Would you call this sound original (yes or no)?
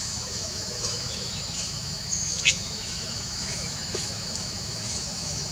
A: no